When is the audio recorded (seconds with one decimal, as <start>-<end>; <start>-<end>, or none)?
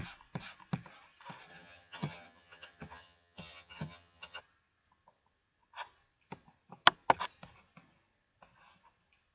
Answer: 0.0-1.5; 4.4-9.3